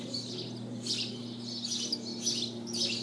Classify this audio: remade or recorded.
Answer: recorded